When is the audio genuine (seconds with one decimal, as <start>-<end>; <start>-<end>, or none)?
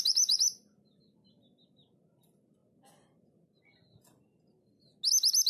0.0-5.5